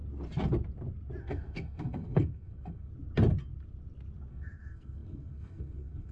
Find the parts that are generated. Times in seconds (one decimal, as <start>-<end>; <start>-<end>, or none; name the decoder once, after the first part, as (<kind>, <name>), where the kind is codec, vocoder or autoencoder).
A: 1.2-2.9 (codec, SNAC); 4.3-6.1